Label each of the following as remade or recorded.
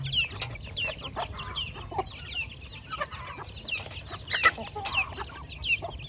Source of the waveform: recorded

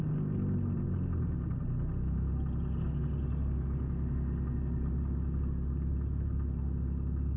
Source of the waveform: recorded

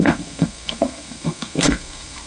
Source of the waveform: remade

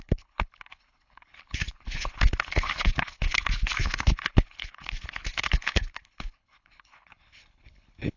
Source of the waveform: remade